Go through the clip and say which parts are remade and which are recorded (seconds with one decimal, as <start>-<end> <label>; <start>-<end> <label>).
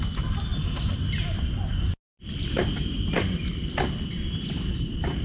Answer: 0.0-5.2 recorded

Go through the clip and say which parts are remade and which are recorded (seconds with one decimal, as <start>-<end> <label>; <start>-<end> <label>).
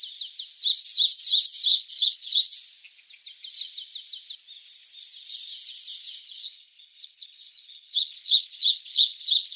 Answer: 0.0-1.7 recorded; 1.7-2.4 remade; 2.4-6.2 recorded; 6.2-9.6 remade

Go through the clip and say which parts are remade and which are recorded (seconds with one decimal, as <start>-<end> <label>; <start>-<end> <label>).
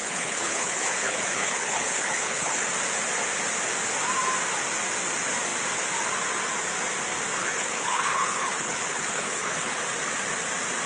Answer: 0.0-2.7 remade; 2.7-7.4 recorded; 7.4-9.8 remade; 9.8-10.9 recorded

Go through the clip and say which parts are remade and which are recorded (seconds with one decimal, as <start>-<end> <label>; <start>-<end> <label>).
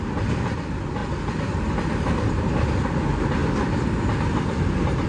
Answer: 0.0-5.1 recorded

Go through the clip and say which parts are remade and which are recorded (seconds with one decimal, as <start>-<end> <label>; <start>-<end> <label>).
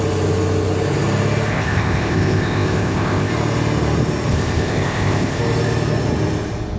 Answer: 0.0-1.5 recorded; 1.5-3.3 remade; 3.3-4.3 recorded; 4.3-5.4 remade; 5.4-6.8 recorded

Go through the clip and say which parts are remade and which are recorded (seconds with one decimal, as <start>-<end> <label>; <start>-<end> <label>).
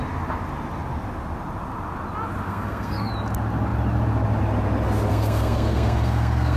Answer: 0.0-2.5 recorded; 2.5-3.1 remade; 3.1-5.1 recorded; 5.1-6.6 remade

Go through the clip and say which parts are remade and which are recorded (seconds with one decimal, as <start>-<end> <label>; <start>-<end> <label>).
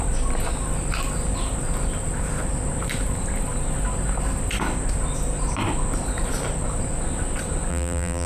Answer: 0.0-7.7 recorded; 7.7-8.3 remade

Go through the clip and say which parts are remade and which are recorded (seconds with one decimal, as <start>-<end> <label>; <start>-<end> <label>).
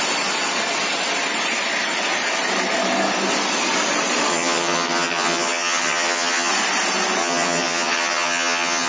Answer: 0.0-4.3 recorded; 4.3-6.5 remade; 6.5-7.2 recorded; 7.2-8.9 remade